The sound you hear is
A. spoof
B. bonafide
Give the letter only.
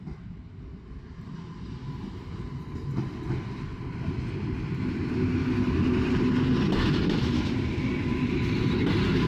B